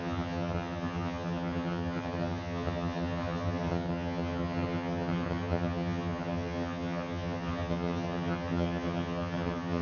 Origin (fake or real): fake